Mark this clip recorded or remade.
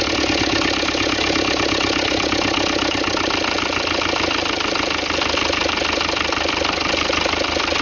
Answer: recorded